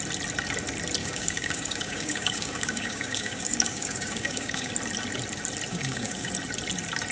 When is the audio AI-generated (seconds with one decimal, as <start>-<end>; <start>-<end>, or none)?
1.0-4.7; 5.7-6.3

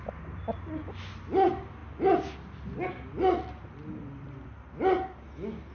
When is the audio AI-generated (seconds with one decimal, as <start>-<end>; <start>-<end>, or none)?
none

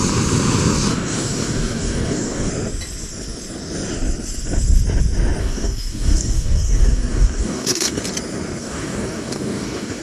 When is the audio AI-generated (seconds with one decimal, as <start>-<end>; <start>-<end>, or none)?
0.9-2.5; 5.4-8.0; 8.6-10.0

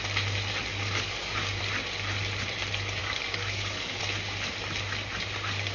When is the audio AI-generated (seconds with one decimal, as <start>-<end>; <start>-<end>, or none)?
0.7-1.6; 3.0-4.0

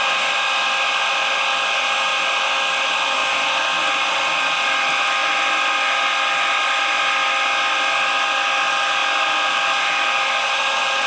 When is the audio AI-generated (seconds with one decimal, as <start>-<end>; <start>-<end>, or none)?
none